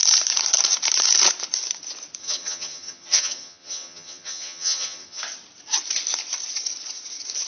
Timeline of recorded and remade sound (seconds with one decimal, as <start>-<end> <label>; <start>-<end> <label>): 0.0-2.2 recorded; 2.2-5.2 remade; 5.2-7.5 recorded